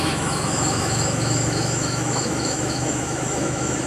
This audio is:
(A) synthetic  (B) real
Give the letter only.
A